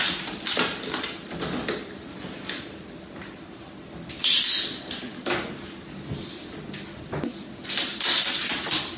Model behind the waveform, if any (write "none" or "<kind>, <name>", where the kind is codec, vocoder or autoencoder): none